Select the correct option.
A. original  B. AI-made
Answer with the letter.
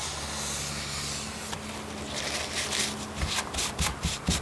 A